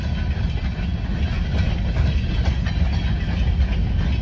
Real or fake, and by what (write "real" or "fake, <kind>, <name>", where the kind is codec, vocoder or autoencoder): real